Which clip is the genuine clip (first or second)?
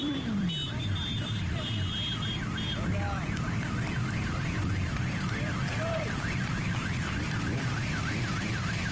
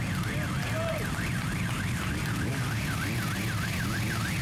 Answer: second